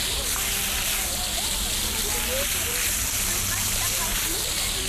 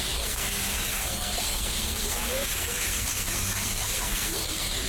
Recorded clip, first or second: first